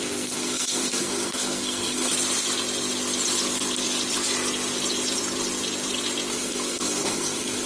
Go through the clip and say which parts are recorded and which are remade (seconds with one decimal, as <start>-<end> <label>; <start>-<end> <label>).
0.0-2.1 remade; 2.1-6.3 recorded; 6.3-7.7 remade